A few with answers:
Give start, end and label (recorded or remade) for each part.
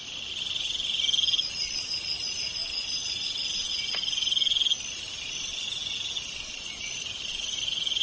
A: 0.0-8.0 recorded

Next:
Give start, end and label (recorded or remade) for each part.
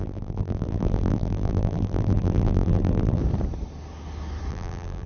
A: 0.0-3.2 remade; 3.2-4.5 recorded; 4.5-5.1 remade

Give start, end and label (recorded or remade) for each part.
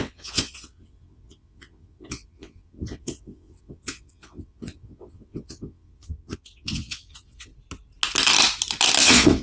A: 0.0-7.5 remade; 7.5-9.0 recorded; 9.0-9.4 remade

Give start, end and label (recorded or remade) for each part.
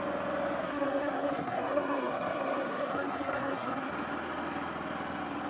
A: 0.0-0.6 recorded; 0.6-3.9 remade; 3.9-5.5 recorded